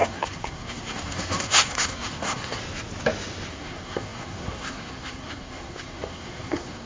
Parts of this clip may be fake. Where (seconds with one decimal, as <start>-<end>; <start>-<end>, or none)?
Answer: 0.0-2.6; 3.5-6.9